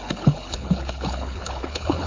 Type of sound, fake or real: fake